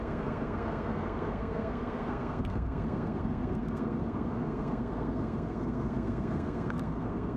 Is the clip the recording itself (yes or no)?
no